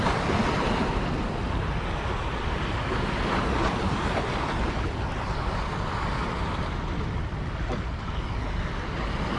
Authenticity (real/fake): real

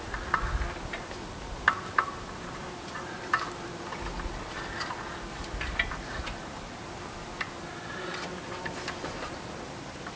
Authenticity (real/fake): real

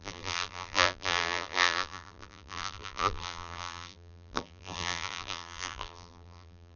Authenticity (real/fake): fake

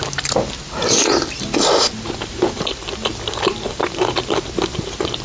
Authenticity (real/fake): real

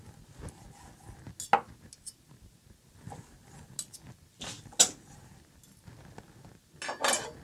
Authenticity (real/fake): real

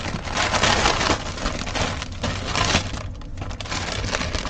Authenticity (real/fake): real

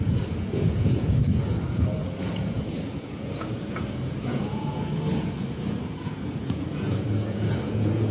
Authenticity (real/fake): fake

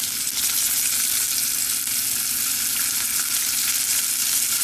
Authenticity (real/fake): real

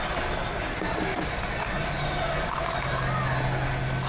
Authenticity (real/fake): real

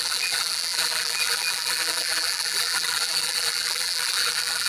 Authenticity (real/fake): fake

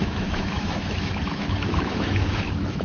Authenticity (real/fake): fake